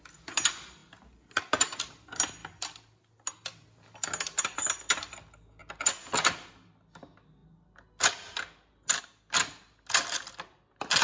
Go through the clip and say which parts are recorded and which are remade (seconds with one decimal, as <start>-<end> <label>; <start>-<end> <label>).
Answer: 0.0-11.0 recorded

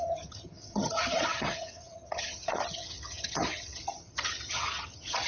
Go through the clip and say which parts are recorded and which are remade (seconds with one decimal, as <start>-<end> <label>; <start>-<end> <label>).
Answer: 0.0-5.3 remade

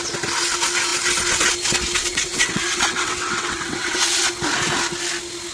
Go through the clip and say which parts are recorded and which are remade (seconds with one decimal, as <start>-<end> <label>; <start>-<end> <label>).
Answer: 0.0-2.1 recorded; 2.1-4.3 remade; 4.3-5.5 recorded